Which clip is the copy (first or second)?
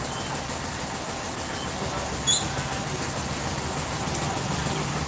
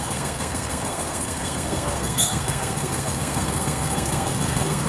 second